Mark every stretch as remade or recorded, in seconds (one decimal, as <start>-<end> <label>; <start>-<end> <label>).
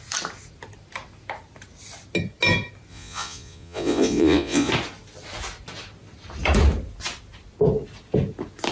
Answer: 0.0-2.9 recorded; 2.9-4.7 remade; 4.7-8.7 recorded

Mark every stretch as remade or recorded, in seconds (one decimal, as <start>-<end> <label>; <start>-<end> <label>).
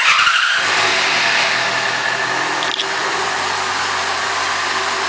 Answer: 0.0-3.0 recorded; 3.0-4.3 remade; 4.3-5.1 recorded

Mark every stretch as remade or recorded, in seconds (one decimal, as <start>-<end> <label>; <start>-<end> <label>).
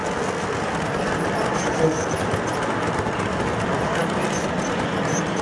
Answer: 0.0-5.4 recorded